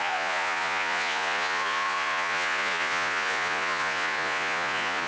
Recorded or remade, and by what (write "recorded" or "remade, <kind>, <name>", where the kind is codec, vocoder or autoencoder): remade, vocoder, Vocos